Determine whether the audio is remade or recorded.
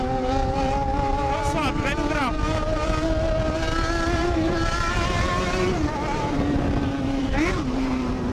remade